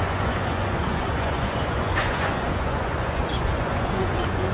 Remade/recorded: remade